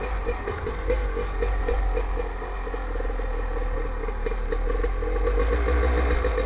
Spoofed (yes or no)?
no